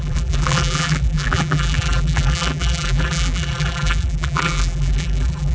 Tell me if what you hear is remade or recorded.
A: remade